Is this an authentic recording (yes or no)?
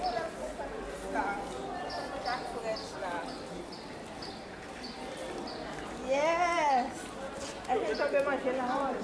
yes